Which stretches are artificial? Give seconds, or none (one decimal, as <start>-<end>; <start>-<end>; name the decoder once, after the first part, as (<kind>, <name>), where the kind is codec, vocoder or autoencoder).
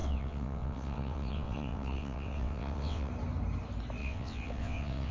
0.0-3.1 (vocoder, WaveNeXt); 4.0-5.1